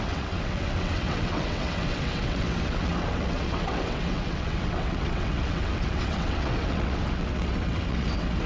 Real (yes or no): no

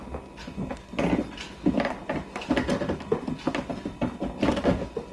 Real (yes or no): yes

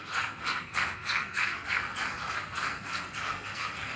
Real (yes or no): no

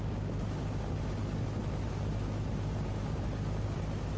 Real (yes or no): yes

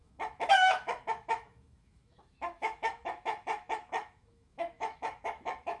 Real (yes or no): no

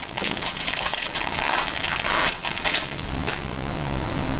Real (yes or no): no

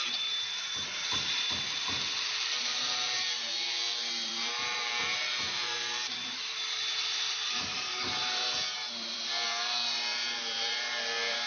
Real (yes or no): no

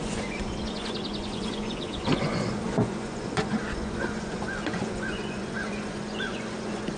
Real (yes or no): no